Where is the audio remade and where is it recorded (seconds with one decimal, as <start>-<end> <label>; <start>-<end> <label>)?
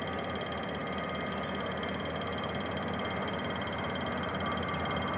0.0-5.2 recorded